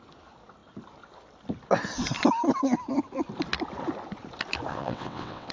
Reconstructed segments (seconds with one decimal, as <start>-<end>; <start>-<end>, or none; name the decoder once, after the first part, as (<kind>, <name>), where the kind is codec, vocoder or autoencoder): 4.7-5.5 (vocoder, WaveNeXt)